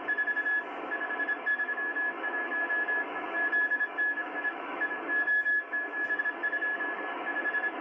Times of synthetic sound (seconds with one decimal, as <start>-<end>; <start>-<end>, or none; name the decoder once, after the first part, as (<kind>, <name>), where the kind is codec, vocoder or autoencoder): 1.5-6.2 (autoencoder, DAC-VAE)